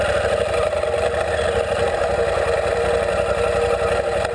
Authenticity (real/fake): real